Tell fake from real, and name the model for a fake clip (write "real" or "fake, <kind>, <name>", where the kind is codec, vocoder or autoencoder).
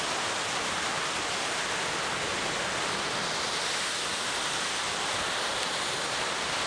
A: real